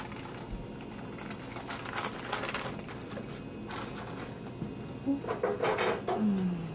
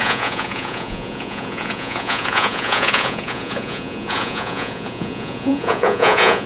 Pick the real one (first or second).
first